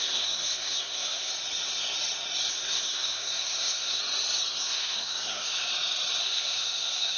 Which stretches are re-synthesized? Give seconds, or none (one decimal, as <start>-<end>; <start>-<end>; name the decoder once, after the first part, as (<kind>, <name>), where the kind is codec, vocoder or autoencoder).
0.0-1.3 (codec, SNAC); 2.5-4.0; 4.5-5.7; 6.2-7.2